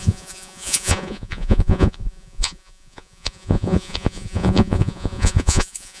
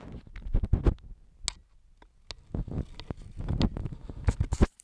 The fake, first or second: first